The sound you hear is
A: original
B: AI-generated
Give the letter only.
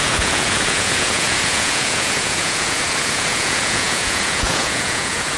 B